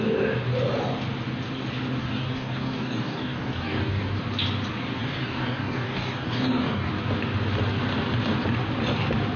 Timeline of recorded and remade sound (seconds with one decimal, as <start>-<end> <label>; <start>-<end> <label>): 0.0-2.0 recorded; 2.0-4.2 remade; 4.2-5.0 recorded; 5.0-6.9 remade; 6.9-9.4 recorded

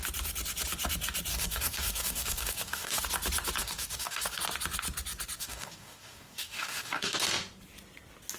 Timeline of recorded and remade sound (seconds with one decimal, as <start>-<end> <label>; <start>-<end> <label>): 0.0-1.3 recorded; 1.3-3.0 remade; 3.0-3.6 recorded; 3.6-4.4 remade; 4.4-5.4 recorded; 5.4-7.2 remade; 7.2-8.4 recorded

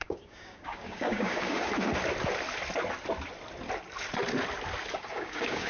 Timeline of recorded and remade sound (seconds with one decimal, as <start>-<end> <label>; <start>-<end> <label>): 0.0-1.7 remade; 1.7-4.9 recorded; 4.9-5.7 remade

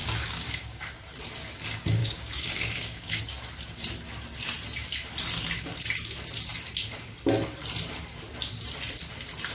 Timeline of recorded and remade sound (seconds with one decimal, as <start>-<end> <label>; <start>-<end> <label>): 0.0-0.8 remade; 0.8-2.0 recorded; 2.0-3.2 remade; 3.2-9.5 recorded

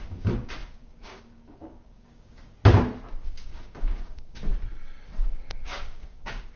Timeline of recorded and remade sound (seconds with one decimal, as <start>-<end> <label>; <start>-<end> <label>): 0.0-2.6 remade; 2.6-3.2 recorded; 3.2-4.5 remade; 4.5-5.5 recorded; 5.5-6.6 remade

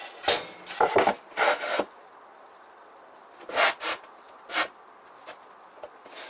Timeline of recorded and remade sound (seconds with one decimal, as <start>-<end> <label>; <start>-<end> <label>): 0.0-6.3 recorded

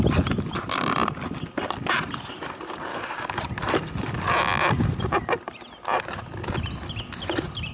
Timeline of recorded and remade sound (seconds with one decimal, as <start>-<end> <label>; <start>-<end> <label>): 0.0-2.9 recorded; 2.9-3.4 remade; 3.4-7.7 recorded